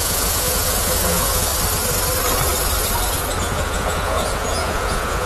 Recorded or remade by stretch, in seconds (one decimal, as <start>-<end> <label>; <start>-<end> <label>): 0.0-1.5 remade; 1.5-3.4 recorded; 3.4-5.3 remade